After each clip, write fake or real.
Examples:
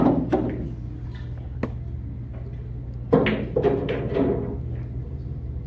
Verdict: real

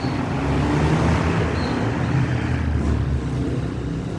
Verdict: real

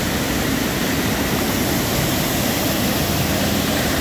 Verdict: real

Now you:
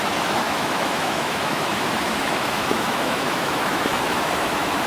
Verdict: fake